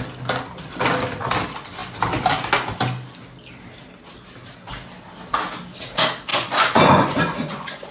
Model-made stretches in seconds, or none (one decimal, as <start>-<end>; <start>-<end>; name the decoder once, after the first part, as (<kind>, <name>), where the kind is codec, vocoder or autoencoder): 6.3-7.9 (vocoder, Vocos)